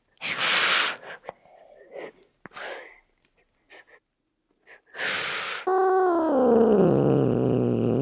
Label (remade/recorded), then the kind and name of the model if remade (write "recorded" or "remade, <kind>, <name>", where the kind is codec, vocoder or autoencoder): recorded